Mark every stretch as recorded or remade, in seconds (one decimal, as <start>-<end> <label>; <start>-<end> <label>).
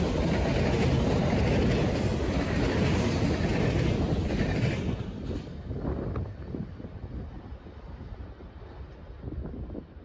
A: 0.0-10.0 recorded